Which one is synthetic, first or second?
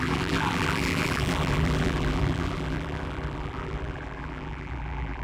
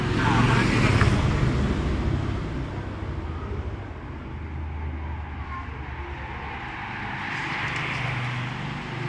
first